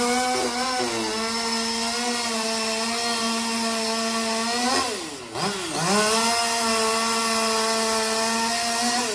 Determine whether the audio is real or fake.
real